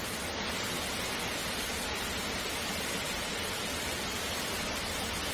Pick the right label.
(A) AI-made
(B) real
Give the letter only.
B